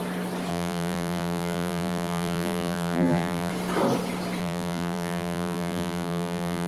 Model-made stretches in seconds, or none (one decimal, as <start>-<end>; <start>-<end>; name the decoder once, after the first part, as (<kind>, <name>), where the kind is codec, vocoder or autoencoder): 0.5-3.5 (vocoder, BigVGAN v2); 4.4-6.7